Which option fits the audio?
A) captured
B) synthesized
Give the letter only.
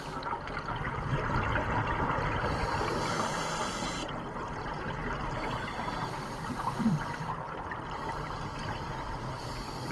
A